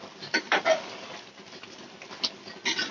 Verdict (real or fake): real